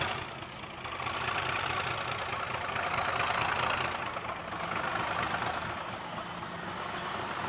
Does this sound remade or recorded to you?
recorded